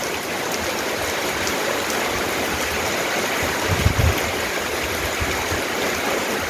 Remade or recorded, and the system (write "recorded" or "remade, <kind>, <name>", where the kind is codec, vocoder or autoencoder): recorded